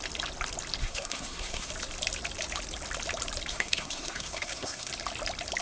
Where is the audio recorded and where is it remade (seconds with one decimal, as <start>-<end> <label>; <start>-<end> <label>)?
0.0-0.8 recorded; 0.8-1.7 remade; 1.7-3.5 recorded; 3.5-4.9 remade; 4.9-5.6 recorded